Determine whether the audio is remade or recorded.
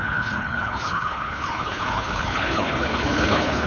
remade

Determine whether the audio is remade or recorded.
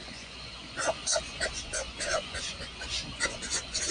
remade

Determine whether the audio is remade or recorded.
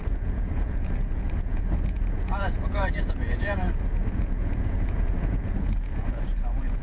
remade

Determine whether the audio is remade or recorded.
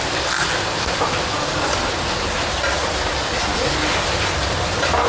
recorded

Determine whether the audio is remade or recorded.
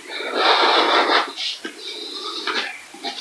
recorded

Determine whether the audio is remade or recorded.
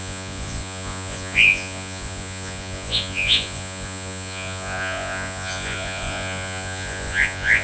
remade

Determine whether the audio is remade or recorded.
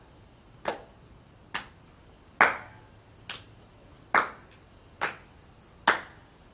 recorded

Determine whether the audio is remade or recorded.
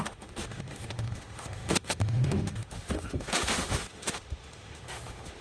remade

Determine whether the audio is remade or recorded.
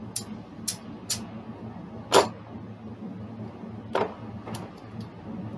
recorded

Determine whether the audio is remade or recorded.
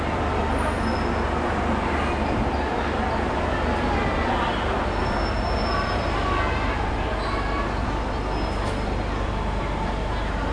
recorded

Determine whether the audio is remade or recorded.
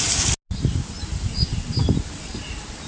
recorded